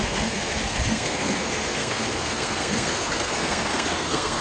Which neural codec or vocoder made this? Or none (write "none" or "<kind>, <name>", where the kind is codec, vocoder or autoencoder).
codec, SNAC